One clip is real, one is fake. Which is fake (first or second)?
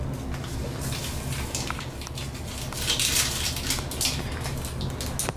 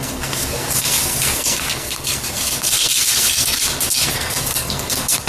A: second